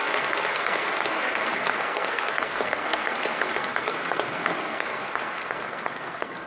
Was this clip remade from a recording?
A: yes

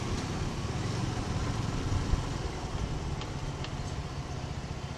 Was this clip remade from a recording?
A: no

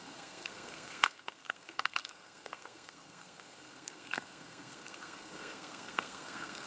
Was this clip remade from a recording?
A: yes